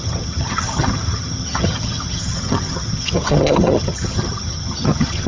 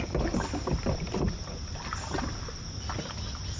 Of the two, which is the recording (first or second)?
second